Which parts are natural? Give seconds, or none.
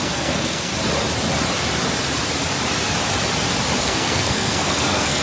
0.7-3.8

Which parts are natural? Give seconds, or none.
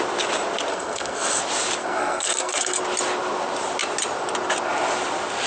0.0-0.7; 1.4-1.8; 2.8-5.5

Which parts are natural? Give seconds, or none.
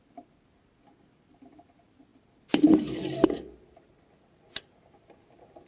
0.0-5.7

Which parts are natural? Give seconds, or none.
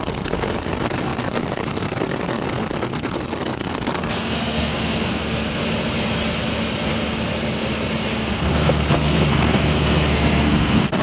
5.6-8.1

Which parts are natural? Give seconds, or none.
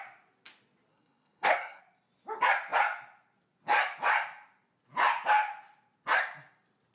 0.0-0.9; 1.8-6.9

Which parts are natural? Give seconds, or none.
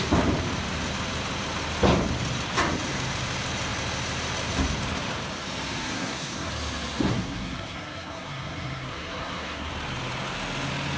0.0-5.8; 6.5-7.1; 9.7-11.0